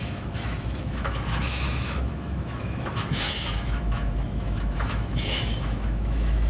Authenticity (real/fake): fake